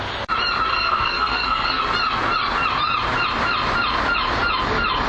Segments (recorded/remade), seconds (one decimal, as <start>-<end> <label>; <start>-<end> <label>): 0.0-0.7 recorded; 0.7-1.8 remade; 1.8-5.1 recorded